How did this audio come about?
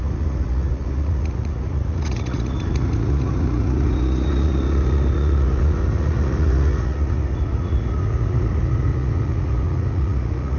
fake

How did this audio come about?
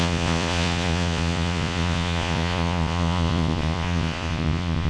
fake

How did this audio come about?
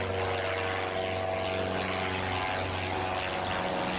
real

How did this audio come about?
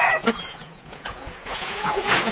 fake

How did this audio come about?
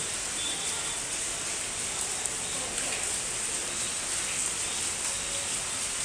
real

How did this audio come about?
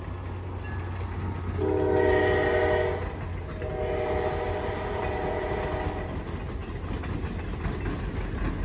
real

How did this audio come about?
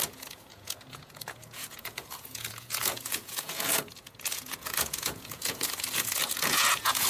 fake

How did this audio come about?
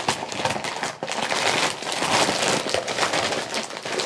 real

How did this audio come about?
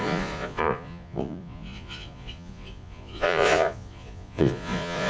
fake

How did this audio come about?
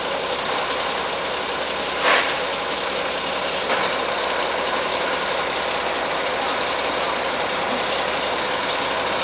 real